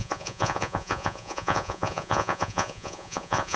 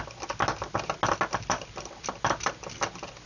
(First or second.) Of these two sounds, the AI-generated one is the first